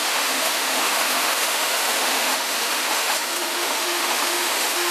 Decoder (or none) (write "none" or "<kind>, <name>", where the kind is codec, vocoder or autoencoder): autoencoder, DAC-VAE